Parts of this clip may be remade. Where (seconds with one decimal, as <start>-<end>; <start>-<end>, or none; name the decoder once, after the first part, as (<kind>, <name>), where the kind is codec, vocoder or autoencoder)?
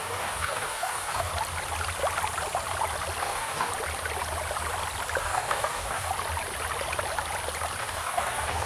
0.0-1.3 (codec, DAC); 3.2-3.7; 5.2-6.1; 7.8-8.7